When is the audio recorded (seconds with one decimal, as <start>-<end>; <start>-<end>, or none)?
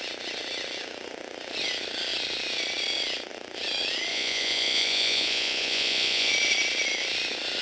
0.0-4.1; 6.3-7.6